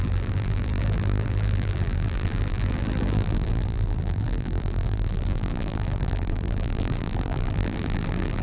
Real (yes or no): no